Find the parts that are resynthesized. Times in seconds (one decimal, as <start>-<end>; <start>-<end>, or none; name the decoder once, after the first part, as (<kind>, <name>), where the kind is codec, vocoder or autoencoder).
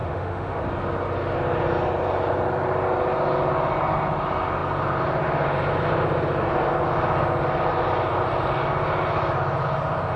0.0-0.6 (autoencoder, DAC-VAE)